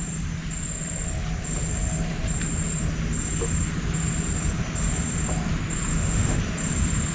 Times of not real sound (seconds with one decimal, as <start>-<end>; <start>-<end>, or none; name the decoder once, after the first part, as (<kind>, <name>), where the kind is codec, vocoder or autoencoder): 5.9-6.4 (autoencoder, DAC-VAE)